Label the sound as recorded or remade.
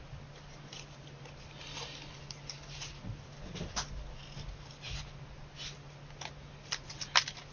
recorded